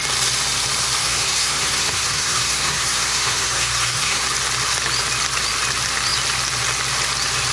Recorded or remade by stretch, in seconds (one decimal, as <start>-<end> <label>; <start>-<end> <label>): 0.0-1.0 recorded; 1.0-4.2 remade; 4.2-7.5 recorded